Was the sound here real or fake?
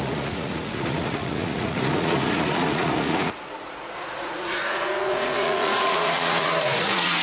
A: fake